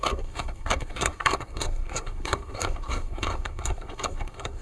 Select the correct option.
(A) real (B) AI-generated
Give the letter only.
B